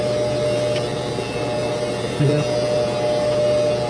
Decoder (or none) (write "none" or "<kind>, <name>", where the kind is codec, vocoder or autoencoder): none